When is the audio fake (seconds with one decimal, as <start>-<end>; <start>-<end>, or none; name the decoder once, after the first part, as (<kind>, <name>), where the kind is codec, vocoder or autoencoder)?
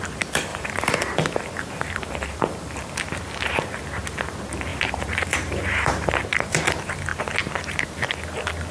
0.5-2.9 (vocoder, BigVGAN v2); 4.7-6.1